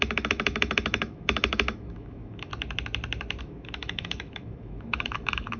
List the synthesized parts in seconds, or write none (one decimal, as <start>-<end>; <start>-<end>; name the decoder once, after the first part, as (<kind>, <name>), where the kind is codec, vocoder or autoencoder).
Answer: 0.0-2.5 (autoencoder, DAC-VAE); 3.4-5.6